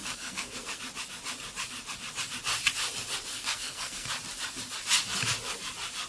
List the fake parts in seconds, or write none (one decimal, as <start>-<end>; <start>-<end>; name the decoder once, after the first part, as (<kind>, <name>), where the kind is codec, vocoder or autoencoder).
0.0-0.8 (codec, SNAC); 3.3-4.1